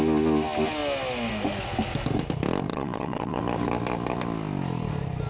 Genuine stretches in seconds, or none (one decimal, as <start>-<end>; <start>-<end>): 0.0-2.7; 3.4-5.3